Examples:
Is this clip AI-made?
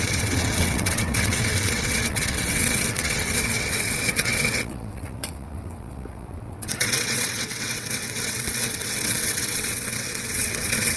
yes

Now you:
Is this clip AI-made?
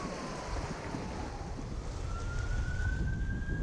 no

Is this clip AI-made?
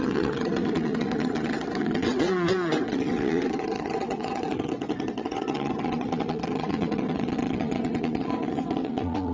yes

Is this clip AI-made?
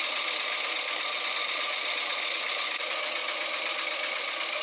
no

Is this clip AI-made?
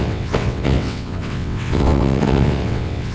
yes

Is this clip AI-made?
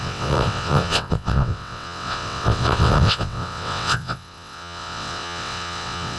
yes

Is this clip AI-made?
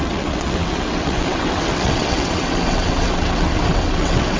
yes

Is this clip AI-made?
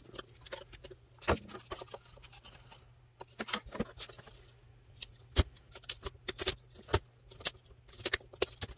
no